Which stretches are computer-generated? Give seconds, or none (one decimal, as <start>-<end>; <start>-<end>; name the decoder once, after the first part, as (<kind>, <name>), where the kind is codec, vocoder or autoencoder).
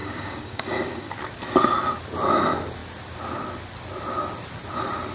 0.0-1.1 (codec, DAC)